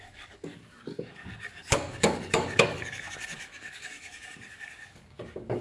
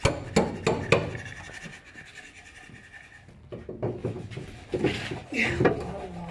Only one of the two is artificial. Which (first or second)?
first